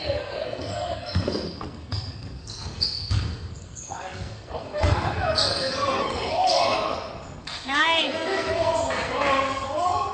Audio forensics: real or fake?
fake